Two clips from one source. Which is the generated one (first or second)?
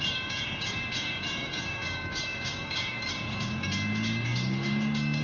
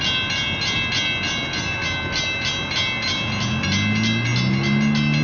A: first